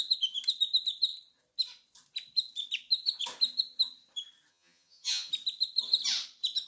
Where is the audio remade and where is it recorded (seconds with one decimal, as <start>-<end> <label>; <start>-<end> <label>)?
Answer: 0.0-4.5 recorded; 4.5-5.3 remade; 5.3-6.7 recorded